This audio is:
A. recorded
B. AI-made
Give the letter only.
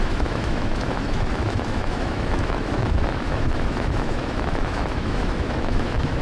B